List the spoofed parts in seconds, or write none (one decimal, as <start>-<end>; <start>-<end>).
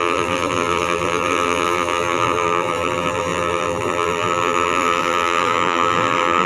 0.0-6.5